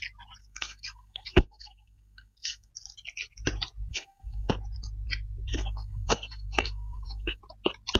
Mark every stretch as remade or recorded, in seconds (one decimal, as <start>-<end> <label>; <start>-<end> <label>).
0.0-0.4 recorded; 0.4-2.7 remade; 2.7-3.9 recorded; 3.9-4.5 remade; 4.5-5.5 recorded; 5.5-7.4 remade; 7.4-8.0 recorded